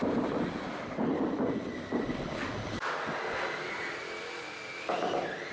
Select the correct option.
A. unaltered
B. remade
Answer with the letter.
A